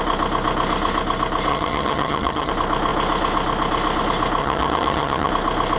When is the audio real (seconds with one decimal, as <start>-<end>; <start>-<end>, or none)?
0.0-1.5; 2.5-4.4; 5.3-5.8